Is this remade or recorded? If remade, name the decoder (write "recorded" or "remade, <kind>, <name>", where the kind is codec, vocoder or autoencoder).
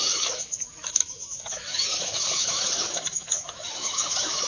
remade, autoencoder, DAC-VAE